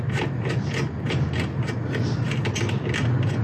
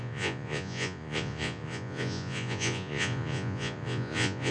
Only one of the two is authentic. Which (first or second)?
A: first